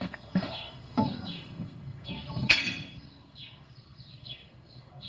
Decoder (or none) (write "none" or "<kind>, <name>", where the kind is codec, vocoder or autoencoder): codec, SNAC